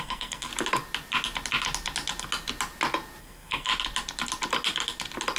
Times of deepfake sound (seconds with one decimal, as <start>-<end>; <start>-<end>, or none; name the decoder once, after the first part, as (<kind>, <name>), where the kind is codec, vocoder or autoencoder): 0.0-0.5 (codec, SNAC); 3.2-3.7